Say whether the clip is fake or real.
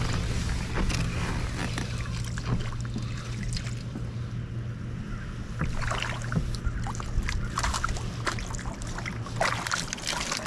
real